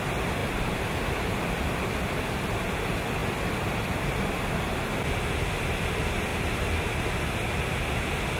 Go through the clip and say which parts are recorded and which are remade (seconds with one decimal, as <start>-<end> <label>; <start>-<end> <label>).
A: 0.0-0.4 recorded; 0.4-1.8 remade; 1.8-6.3 recorded; 6.3-6.9 remade; 6.9-8.4 recorded